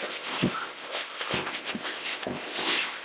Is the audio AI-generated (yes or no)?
yes